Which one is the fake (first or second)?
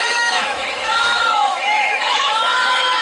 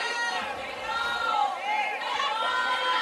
first